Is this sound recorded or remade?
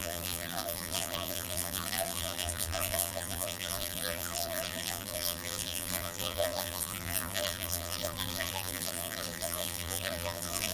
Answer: remade